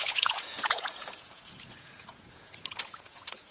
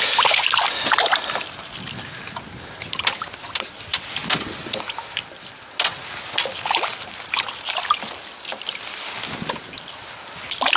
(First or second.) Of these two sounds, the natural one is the second